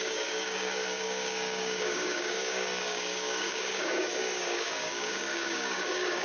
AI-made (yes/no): yes